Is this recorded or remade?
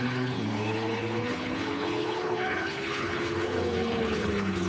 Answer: remade